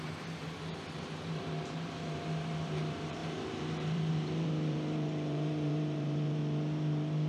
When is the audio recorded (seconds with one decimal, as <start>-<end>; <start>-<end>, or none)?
6.4-7.3